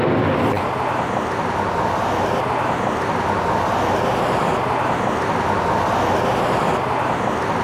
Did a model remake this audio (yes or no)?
no